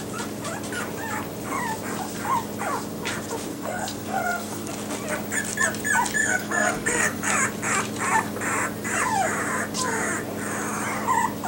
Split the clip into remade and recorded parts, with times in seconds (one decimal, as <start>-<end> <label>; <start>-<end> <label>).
0.0-3.5 recorded; 3.5-4.7 remade; 4.7-6.2 recorded; 6.2-7.3 remade; 7.3-11.5 recorded